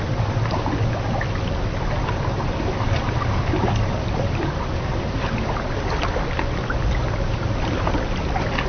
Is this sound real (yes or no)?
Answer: yes